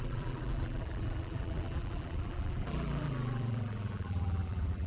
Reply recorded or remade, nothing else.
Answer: remade